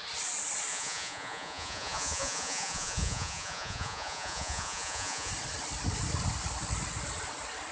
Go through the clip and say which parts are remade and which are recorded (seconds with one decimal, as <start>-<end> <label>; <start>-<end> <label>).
0.0-0.7 recorded; 0.7-5.3 remade; 5.3-7.7 recorded